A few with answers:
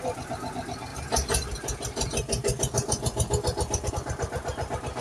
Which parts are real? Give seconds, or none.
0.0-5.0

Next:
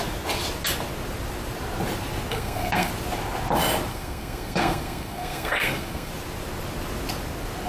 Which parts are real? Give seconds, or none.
0.0-2.3; 2.9-3.9; 6.1-7.7

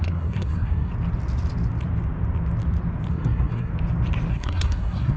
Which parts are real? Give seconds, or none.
0.9-3.1; 3.7-4.3

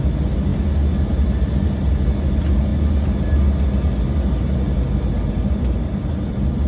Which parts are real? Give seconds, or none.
0.0-6.7

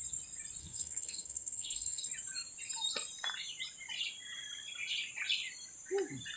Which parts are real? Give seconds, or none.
0.0-0.6; 2.1-6.4

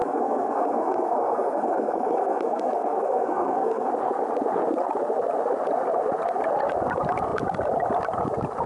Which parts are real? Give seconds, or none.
3.9-8.7